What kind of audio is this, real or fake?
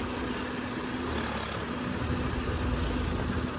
real